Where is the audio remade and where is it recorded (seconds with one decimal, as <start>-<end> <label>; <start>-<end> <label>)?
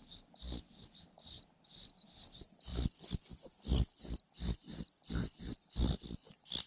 0.0-6.7 recorded